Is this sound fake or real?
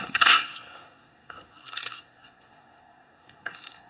fake